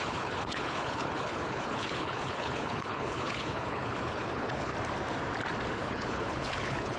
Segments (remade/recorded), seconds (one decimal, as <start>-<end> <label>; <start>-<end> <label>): 0.0-4.7 remade; 4.7-5.7 recorded; 5.7-7.0 remade